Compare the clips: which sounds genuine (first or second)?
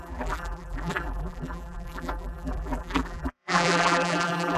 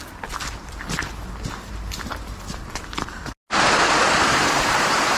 second